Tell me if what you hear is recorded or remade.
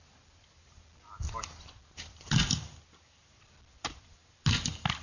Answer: recorded